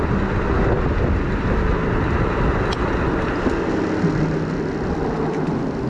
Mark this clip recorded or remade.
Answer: recorded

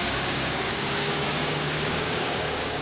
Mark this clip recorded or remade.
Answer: remade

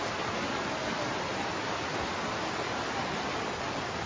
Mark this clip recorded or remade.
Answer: recorded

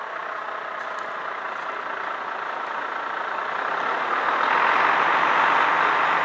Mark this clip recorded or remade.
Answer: recorded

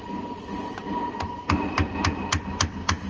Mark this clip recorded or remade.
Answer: recorded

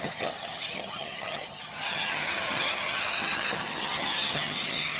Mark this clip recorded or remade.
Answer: remade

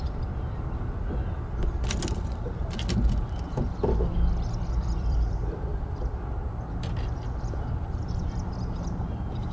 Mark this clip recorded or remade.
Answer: remade